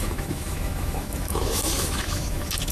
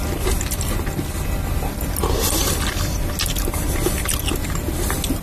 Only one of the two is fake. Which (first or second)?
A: first